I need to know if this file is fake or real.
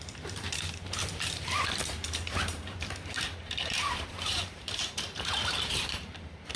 fake